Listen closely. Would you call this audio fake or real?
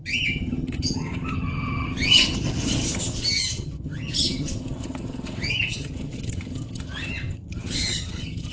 fake